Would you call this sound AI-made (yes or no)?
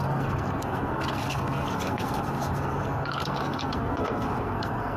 yes